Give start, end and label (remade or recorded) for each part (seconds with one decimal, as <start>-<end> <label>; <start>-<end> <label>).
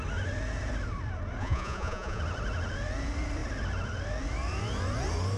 0.0-1.4 recorded; 1.4-2.2 remade; 2.2-5.4 recorded